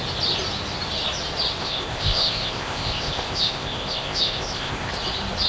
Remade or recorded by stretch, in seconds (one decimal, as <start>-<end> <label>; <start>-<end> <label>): 0.0-1.6 recorded; 1.6-4.9 remade; 4.9-5.5 recorded